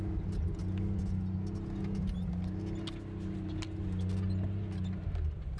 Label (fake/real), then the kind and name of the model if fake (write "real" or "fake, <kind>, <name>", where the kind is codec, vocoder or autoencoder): real